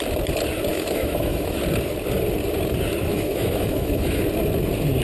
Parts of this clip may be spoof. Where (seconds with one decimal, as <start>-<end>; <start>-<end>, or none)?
0.7-1.6; 3.1-4.2